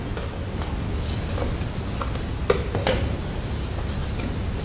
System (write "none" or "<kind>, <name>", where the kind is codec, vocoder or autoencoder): none